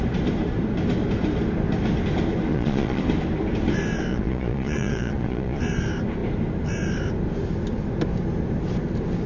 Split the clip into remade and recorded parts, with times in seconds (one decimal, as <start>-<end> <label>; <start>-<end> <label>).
0.0-2.5 recorded; 2.5-3.0 remade; 3.0-4.1 recorded; 4.1-5.6 remade; 5.6-9.3 recorded